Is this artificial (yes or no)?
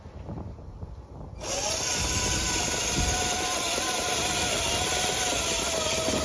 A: no